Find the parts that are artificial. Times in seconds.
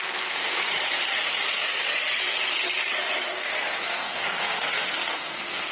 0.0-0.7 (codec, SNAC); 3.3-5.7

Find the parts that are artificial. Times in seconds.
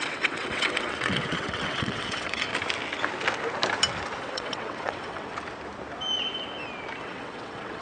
0.0-2.5 (vocoder, WaveNeXt); 4.2-5.3; 7.0-7.8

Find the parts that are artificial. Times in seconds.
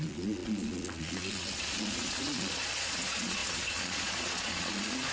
0.0-5.1 (vocoder, Vocos)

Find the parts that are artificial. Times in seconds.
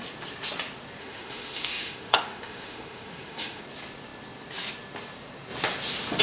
1.0-3.6 (autoencoder, DAC-VAE)